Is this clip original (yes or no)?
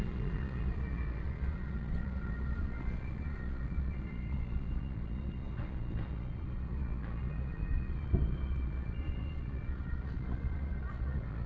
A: no